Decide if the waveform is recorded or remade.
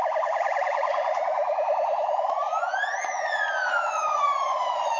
remade